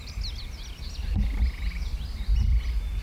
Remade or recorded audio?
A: recorded